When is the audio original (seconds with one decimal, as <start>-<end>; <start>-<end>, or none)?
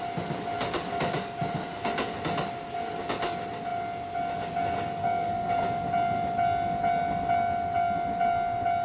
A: 0.0-5.0; 5.5-8.8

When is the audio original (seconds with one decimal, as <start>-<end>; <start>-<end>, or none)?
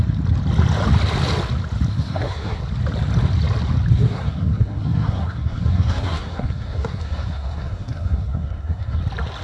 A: 0.0-1.9; 2.6-3.9; 9.0-9.4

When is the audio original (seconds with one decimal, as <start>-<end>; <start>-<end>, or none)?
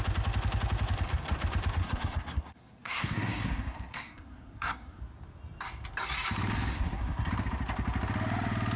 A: 0.0-1.8; 5.0-6.7; 7.3-8.8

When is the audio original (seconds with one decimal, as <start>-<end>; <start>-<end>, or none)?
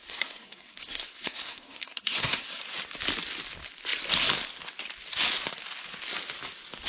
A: 2.6-6.9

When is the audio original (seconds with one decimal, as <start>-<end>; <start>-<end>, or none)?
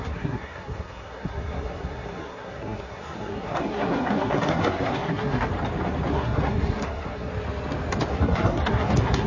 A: 5.5-6.1; 7.3-8.1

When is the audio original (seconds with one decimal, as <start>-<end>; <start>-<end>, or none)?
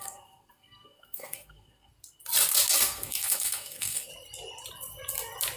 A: 1.9-2.8; 4.1-5.6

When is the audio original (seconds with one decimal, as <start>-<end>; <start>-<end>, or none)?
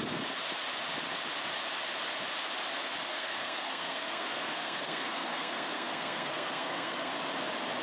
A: 0.0-3.1; 7.1-7.8